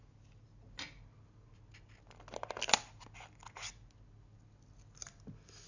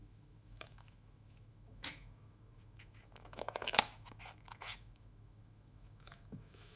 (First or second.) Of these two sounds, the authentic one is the first